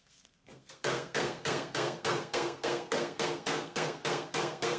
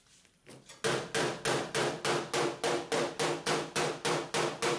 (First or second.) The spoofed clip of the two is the first